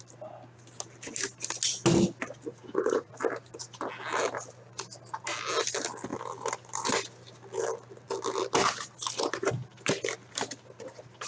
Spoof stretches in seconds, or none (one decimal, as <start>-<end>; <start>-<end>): 2.5-3.1